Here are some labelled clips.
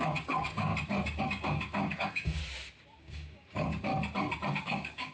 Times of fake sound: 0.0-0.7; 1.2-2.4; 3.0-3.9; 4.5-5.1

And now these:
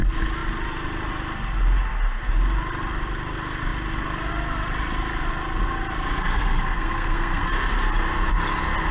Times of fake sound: 6.2-7.5

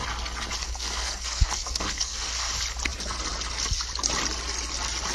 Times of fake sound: 0.6-2.5

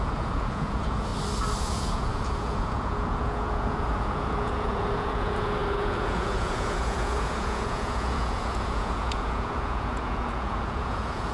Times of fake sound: 0.0-1.1; 1.6-11.3

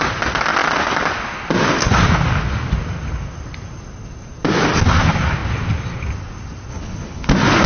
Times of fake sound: 6.7-7.3

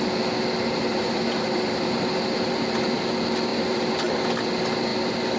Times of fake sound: 0.9-2.5; 3.5-4.1

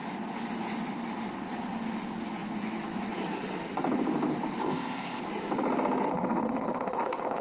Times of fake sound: 4.6-5.2; 6.1-7.4

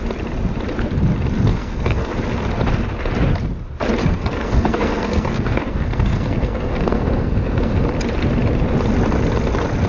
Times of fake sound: 1.5-2.1; 4.0-7.9